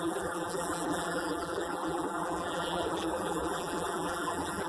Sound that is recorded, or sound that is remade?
remade